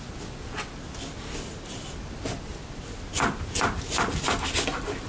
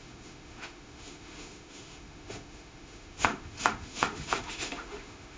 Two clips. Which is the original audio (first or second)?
first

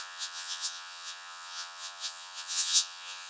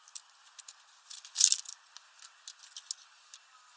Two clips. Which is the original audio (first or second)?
second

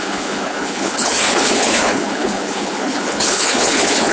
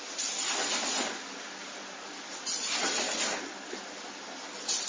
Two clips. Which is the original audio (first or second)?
second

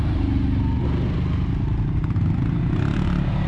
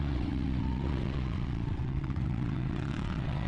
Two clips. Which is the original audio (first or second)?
first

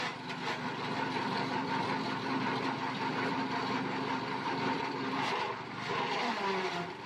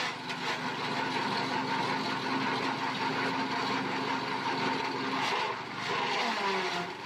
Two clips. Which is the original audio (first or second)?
second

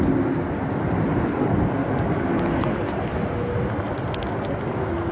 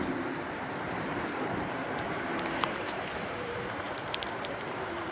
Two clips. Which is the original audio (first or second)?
first